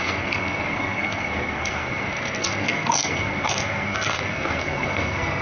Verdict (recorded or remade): remade